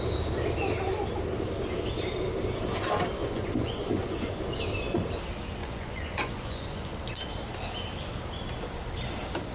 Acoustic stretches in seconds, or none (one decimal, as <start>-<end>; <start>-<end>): 0.0-3.2; 4.3-5.6; 6.9-9.5